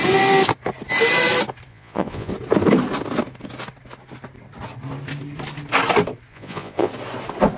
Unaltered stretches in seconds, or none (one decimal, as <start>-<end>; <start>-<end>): 0.0-1.7; 2.3-6.3; 6.9-7.6